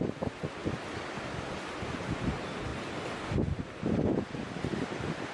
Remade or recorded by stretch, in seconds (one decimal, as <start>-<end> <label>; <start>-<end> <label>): 0.0-0.6 remade; 0.6-1.9 recorded; 1.9-2.7 remade; 2.7-3.6 recorded; 3.6-5.3 remade